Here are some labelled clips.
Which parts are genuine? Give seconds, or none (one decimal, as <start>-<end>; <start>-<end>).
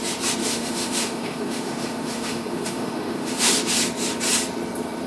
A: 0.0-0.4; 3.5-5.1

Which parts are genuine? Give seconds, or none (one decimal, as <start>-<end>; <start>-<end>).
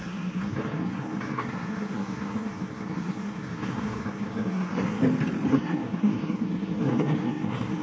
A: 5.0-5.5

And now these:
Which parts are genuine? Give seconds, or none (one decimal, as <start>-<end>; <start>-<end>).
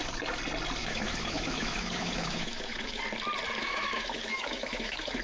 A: 0.0-0.8; 3.0-3.6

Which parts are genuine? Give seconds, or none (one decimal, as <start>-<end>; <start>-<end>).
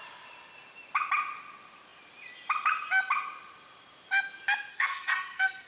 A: 0.0-4.7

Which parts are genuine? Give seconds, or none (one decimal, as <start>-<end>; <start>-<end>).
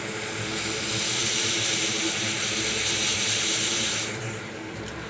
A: 0.0-1.2; 2.1-3.1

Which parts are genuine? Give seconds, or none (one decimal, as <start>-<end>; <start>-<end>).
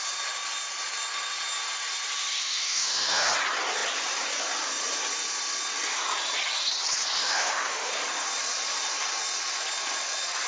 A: 0.0-2.4; 3.3-7.2; 7.9-10.5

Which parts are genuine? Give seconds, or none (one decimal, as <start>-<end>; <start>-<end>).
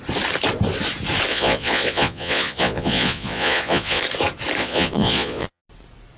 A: 0.0-1.3; 4.0-4.6; 5.6-6.2